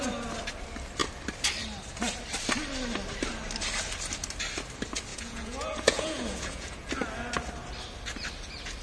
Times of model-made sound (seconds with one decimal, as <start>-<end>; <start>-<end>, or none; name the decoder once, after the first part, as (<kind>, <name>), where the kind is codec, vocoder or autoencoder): 5.1-6.9 (vocoder, Vocos)